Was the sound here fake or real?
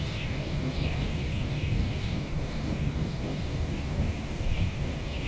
fake